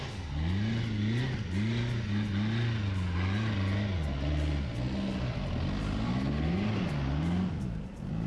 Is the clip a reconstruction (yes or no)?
no